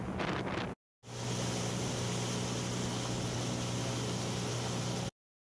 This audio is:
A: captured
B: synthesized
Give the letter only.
A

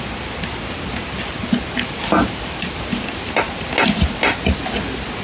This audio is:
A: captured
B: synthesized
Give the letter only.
A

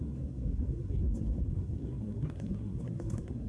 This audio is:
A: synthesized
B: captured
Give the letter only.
A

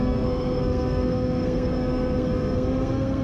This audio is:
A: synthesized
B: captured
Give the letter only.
A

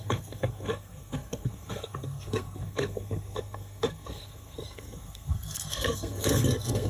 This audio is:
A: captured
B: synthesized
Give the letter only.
B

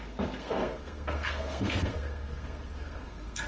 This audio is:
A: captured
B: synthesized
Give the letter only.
B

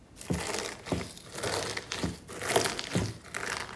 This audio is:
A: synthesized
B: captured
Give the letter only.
B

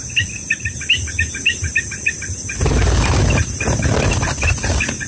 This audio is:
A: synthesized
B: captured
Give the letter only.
B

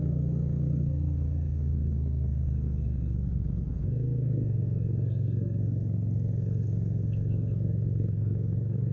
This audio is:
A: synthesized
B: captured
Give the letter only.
A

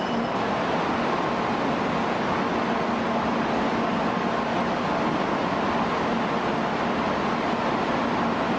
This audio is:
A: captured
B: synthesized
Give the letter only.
A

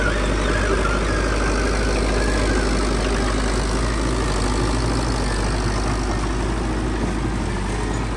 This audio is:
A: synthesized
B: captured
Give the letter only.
B